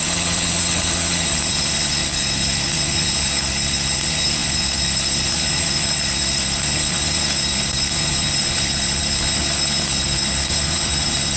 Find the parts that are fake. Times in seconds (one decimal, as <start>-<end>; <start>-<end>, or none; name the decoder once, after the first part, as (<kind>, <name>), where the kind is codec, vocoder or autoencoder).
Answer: 0.0-11.4 (codec, HILCodec)